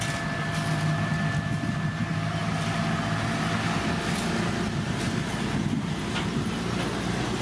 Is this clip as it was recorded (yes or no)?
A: yes